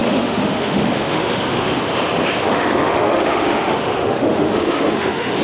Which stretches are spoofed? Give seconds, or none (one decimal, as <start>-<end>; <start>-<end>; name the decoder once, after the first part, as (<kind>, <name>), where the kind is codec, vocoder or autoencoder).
0.0-1.7 (autoencoder, DAC-VAE); 2.4-5.4